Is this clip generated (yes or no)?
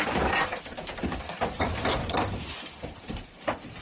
yes